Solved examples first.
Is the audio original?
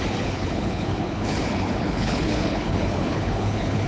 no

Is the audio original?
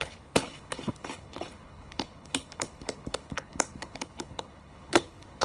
no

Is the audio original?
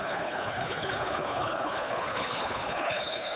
no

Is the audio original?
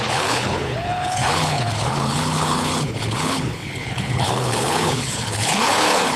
no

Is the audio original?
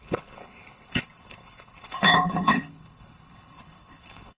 no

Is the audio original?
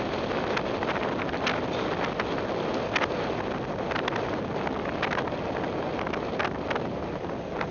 yes